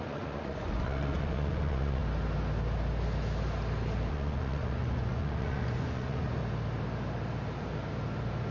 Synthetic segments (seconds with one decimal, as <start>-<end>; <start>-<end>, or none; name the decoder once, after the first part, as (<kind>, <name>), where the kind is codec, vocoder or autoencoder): 0.0-2.0 (vocoder, Vocos); 4.1-6.4